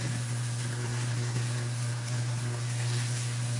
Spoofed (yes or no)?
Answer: yes